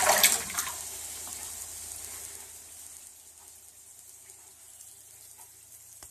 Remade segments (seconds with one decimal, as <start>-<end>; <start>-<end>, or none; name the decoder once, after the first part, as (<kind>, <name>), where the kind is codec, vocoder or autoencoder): none